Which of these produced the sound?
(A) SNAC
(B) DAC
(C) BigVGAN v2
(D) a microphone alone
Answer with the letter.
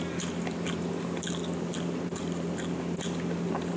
D